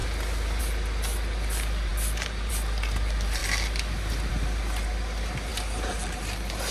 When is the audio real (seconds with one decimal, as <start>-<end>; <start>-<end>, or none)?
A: 0.0-6.7